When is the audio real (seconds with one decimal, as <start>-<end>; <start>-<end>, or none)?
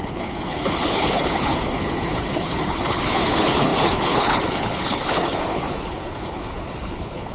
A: none